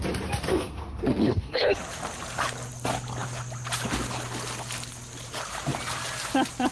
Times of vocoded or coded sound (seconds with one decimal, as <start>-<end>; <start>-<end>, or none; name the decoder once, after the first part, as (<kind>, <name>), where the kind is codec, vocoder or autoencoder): 0.5-1.8 (codec, SNAC)